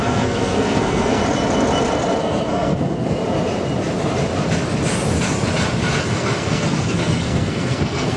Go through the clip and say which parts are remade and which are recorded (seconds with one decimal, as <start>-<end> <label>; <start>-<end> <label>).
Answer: 0.0-1.2 remade; 1.2-2.2 recorded; 2.2-3.2 remade; 3.2-6.0 recorded; 6.0-8.2 remade